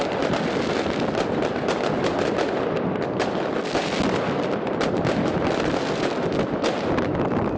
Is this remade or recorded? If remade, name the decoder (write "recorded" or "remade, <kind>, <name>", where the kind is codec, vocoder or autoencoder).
recorded